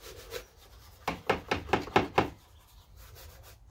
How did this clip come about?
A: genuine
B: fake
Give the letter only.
A